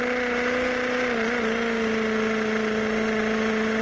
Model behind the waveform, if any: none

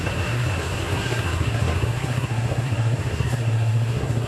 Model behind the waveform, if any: codec, SNAC